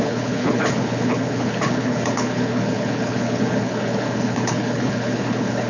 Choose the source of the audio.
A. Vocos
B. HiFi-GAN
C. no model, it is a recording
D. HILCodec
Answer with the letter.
D